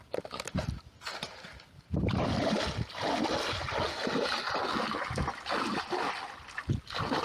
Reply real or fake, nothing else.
real